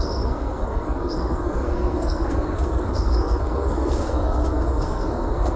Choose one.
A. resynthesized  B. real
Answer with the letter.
A